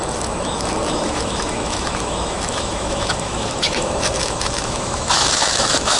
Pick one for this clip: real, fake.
fake